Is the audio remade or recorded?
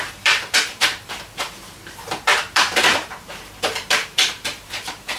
remade